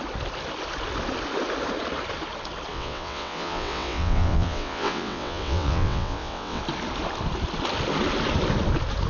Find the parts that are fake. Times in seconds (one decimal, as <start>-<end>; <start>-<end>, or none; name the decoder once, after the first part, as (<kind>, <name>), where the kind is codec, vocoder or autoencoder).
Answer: 2.7-6.6 (vocoder, WaveNeXt)